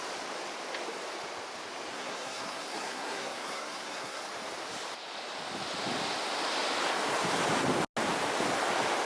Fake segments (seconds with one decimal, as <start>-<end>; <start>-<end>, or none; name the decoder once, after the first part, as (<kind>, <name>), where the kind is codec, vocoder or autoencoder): 1.9-4.2 (codec, SNAC)